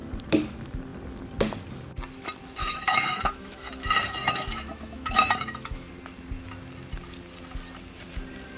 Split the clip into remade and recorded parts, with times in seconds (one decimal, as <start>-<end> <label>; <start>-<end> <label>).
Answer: 0.0-2.6 recorded; 2.6-5.9 remade; 5.9-8.6 recorded